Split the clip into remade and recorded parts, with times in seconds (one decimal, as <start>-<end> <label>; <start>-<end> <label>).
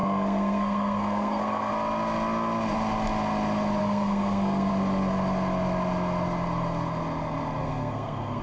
0.0-1.7 remade; 1.7-3.8 recorded; 3.8-4.7 remade; 4.7-7.6 recorded; 7.6-8.4 remade